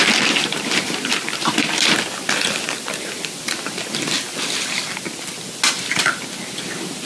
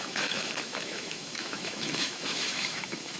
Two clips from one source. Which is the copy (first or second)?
second